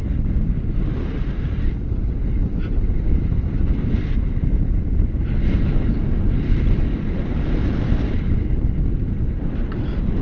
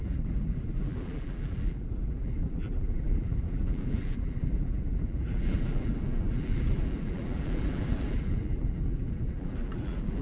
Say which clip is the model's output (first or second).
second